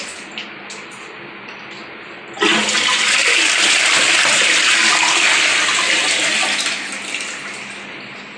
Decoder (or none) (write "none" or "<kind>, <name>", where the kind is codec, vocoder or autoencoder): none